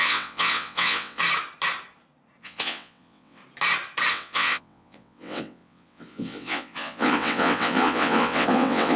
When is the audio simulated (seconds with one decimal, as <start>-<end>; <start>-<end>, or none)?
0.0-1.2; 2.4-3.4; 4.1-9.0

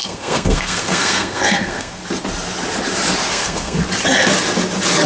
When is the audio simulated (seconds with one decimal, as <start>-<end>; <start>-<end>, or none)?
0.0-2.0; 3.3-3.8

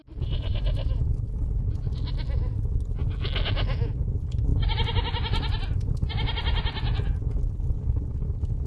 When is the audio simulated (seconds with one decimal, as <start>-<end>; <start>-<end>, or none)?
none

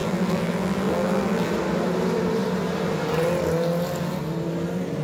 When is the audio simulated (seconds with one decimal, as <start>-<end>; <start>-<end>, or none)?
0.0-1.5

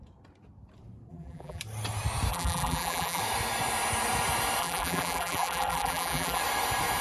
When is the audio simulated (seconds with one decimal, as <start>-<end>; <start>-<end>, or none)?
1.1-1.6; 2.3-3.2; 4.6-6.4

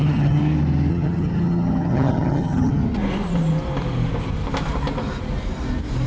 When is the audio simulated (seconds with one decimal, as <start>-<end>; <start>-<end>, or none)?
0.0-0.4; 0.9-2.8

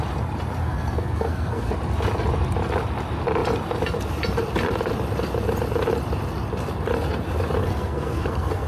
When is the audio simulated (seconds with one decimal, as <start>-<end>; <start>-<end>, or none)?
0.6-1.7; 7.6-8.7